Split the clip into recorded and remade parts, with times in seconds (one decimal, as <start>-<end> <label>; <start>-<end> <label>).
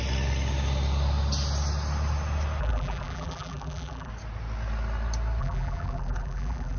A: 0.0-2.6 recorded; 2.6-4.1 remade; 4.1-5.4 recorded; 5.4-6.8 remade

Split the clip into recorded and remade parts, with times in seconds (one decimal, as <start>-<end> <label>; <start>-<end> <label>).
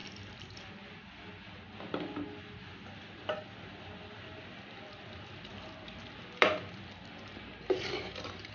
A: 0.0-5.5 remade; 5.5-6.2 recorded; 6.2-8.5 remade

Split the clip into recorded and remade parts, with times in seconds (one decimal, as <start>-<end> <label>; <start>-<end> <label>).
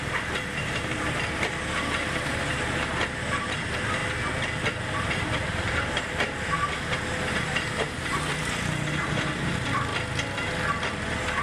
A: 0.0-4.0 remade; 4.0-4.8 recorded; 4.8-9.9 remade; 9.9-10.9 recorded; 10.9-11.4 remade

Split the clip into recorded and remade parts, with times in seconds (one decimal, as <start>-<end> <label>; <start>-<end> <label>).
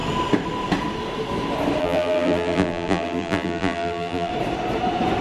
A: 0.0-1.8 recorded; 1.8-4.3 remade; 4.3-5.2 recorded